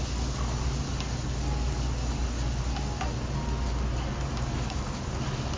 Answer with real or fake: real